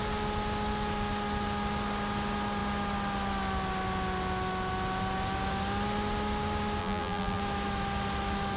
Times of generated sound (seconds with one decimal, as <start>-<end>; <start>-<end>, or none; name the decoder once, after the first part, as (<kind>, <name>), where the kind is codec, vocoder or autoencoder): 6.8-7.4 (vocoder, BigVGAN v2)

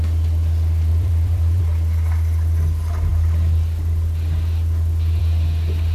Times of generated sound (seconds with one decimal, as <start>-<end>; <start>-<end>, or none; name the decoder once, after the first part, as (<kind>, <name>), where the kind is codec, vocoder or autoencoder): 0.9-1.6 (vocoder, BigVGAN v2)

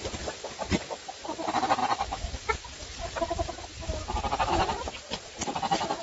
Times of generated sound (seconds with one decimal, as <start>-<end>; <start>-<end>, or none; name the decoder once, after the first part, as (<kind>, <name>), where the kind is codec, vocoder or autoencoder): none